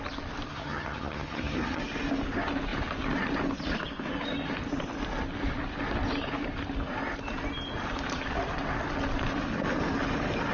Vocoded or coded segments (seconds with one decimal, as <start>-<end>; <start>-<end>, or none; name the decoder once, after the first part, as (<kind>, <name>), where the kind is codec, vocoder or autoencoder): 0.5-1.8 (vocoder, HiFi-GAN)